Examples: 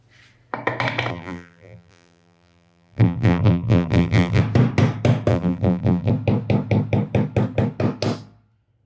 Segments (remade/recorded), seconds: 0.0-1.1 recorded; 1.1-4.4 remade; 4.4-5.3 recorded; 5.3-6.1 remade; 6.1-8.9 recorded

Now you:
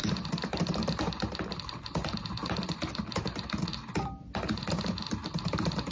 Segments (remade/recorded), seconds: 0.0-3.2 remade; 3.2-5.9 recorded

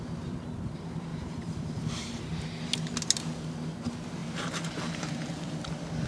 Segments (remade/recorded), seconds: 0.0-1.1 recorded; 1.1-2.3 remade; 2.3-4.2 recorded; 4.2-5.6 remade; 5.6-6.1 recorded

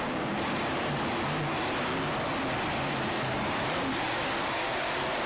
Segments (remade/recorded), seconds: 0.0-1.1 remade; 1.1-2.7 recorded; 2.7-5.3 remade

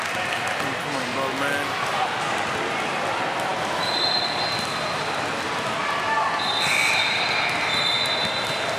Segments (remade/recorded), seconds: 0.0-3.5 recorded; 3.5-6.7 remade; 6.7-8.8 recorded

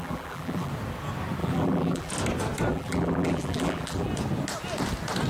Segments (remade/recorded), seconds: 0.0-0.7 remade; 0.7-1.4 recorded; 1.4-2.1 remade; 2.1-2.7 recorded; 2.7-4.1 remade; 4.1-5.3 recorded

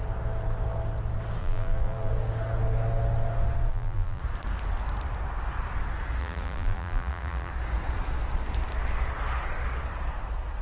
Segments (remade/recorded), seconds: 0.0-1.4 recorded; 1.4-2.1 remade; 2.1-3.7 recorded; 3.7-4.2 remade; 4.2-6.2 recorded; 6.2-7.5 remade; 7.5-10.6 recorded

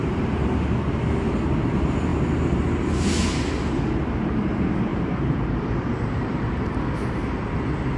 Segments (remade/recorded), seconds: 0.0-0.7 remade; 0.7-4.9 recorded; 4.9-6.8 remade; 6.8-8.0 recorded